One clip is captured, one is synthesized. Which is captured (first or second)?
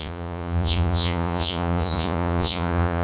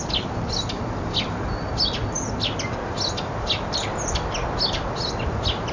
second